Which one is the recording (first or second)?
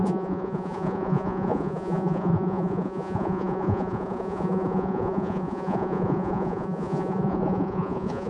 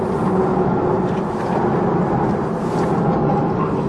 second